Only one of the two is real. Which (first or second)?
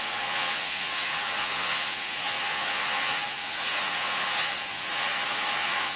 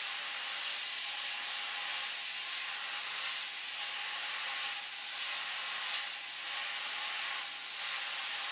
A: second